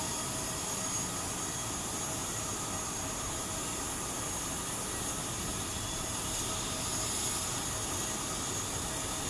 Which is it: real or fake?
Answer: real